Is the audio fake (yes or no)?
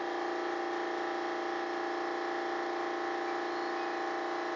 no